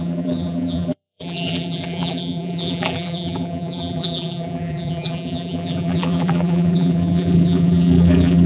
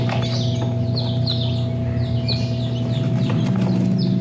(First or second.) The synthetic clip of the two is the first